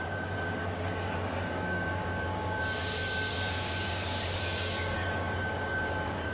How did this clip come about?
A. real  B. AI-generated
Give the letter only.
B